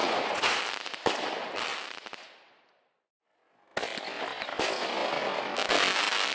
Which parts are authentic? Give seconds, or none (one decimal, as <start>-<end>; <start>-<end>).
0.6-6.3